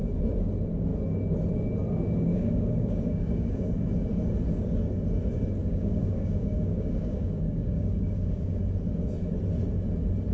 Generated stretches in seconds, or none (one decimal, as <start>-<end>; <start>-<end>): 2.3-3.7; 5.6-8.6